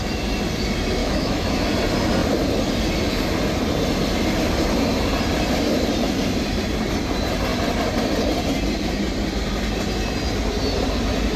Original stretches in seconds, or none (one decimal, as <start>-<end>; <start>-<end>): 0.0-1.0; 1.7-11.4